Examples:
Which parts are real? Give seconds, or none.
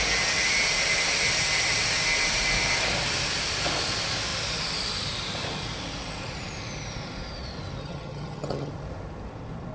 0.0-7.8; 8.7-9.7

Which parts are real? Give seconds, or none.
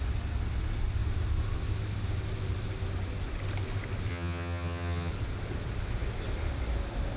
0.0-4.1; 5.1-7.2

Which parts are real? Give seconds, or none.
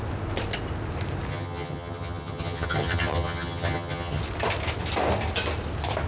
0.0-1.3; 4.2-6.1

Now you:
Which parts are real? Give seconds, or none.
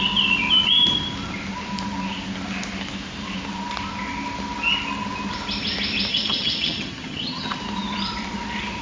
0.0-6.1; 7.6-8.8